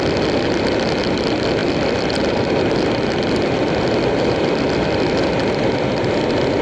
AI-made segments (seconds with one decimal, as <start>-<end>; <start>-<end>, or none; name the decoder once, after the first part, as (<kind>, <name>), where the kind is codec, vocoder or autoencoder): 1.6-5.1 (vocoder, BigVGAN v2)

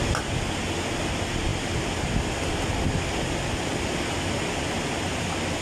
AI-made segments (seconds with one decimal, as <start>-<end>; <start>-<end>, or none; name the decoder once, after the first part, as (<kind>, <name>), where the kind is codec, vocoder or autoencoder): none

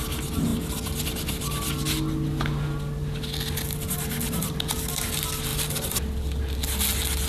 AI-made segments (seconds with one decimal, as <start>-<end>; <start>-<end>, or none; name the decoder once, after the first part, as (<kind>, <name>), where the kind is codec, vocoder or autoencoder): 5.5-6.4 (vocoder, BigVGAN v2)

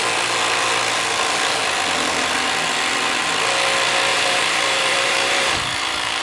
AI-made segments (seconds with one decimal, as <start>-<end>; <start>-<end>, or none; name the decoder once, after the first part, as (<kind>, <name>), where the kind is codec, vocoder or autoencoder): 4.1-6.2 (vocoder, BigVGAN v2)

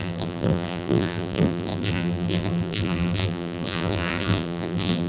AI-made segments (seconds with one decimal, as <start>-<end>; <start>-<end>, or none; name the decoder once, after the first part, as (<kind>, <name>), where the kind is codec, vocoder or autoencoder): 0.0-5.1 (vocoder, BigVGAN v2)